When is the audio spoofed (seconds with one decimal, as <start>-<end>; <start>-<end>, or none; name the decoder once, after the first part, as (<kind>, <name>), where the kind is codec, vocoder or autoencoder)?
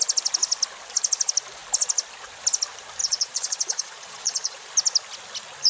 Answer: 3.0-4.7 (vocoder, Vocos)